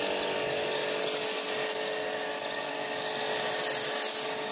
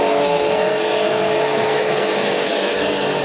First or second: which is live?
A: first